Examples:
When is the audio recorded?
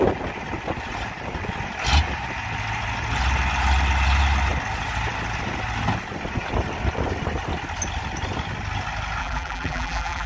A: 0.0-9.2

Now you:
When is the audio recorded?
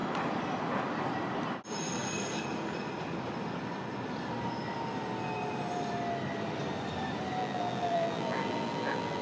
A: 0.0-7.4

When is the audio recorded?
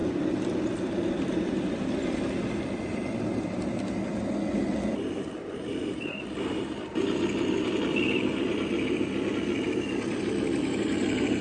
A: 0.0-1.0; 4.1-4.7; 5.7-8.4